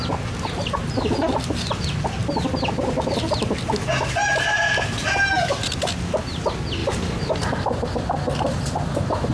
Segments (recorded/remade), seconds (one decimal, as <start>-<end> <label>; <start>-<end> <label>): 0.0-9.3 recorded